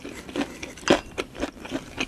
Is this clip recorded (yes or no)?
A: yes